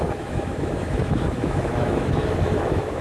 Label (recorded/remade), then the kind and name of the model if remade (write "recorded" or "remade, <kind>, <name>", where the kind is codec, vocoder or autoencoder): remade, autoencoder, DAC-VAE